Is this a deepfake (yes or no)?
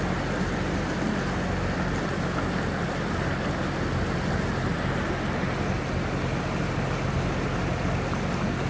no